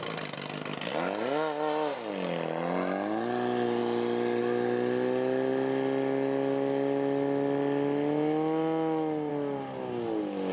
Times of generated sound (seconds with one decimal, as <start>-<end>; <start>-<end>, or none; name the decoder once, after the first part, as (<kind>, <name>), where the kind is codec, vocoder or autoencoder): none